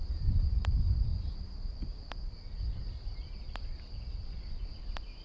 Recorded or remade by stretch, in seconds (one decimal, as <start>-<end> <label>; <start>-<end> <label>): 0.0-1.1 remade; 1.1-4.2 recorded; 4.2-5.2 remade